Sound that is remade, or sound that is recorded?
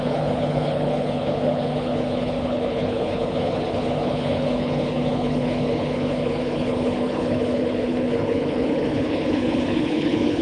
remade